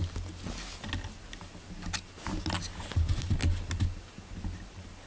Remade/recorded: recorded